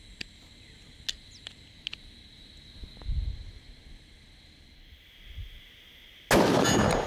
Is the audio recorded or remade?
recorded